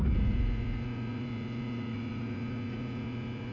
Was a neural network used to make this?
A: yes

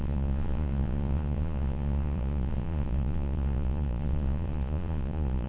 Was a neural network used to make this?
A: yes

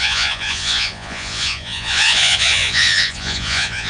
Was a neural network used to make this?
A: yes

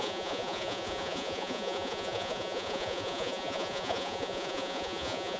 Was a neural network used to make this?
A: yes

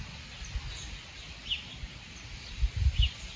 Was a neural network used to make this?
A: no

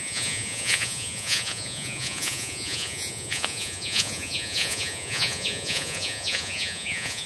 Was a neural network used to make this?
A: yes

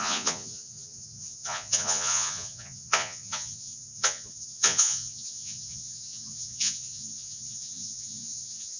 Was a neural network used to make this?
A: yes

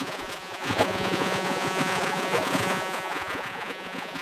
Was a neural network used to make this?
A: yes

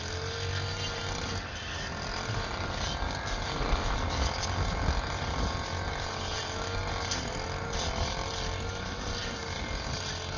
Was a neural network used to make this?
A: no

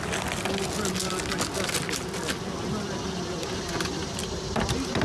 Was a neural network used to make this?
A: no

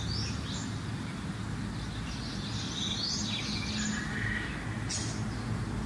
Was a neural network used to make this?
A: no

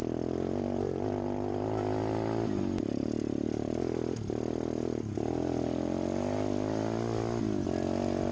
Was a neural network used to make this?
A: no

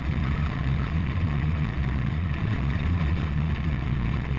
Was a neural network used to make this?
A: yes